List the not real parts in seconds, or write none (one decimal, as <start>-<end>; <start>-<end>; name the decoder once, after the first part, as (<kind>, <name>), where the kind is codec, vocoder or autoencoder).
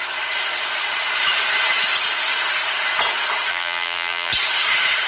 3.5-4.3 (vocoder, BigVGAN v2)